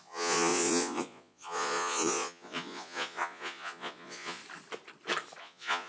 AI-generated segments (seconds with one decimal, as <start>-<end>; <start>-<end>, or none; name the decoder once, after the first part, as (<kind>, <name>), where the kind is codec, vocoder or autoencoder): 0.0-4.4 (vocoder, Vocos); 5.4-5.9